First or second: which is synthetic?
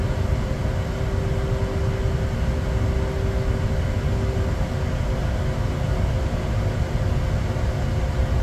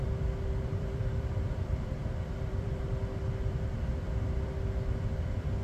second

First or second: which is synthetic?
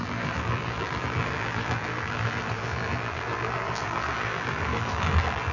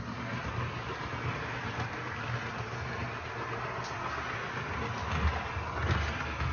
first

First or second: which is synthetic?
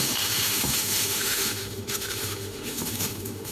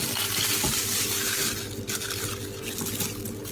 first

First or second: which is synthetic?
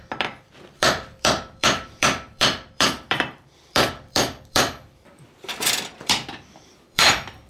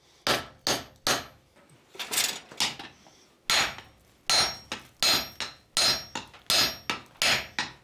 first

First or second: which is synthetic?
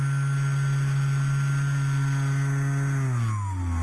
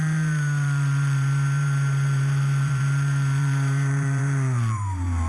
second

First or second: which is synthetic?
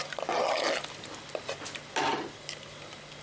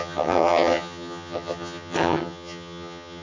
second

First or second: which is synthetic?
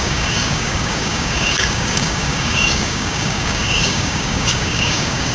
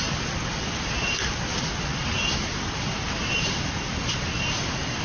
first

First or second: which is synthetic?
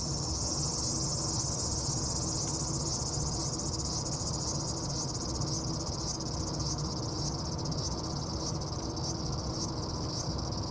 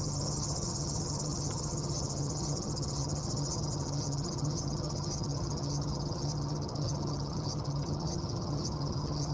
second